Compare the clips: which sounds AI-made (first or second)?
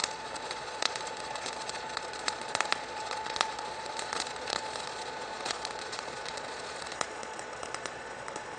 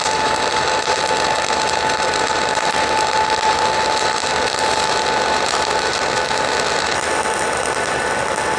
first